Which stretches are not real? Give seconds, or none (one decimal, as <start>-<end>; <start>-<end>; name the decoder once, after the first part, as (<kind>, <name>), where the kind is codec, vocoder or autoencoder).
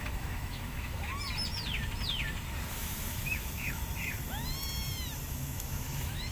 0.0-1.1 (autoencoder, DAC-VAE); 2.7-3.8; 5.3-6.3